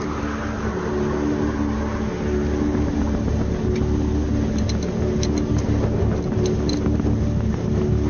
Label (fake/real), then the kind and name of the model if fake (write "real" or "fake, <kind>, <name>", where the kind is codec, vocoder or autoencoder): real